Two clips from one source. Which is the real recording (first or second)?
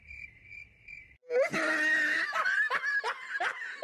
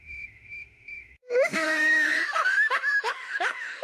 first